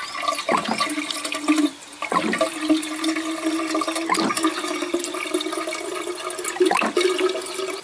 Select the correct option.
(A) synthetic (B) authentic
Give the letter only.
B